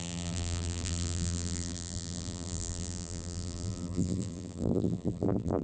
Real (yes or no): no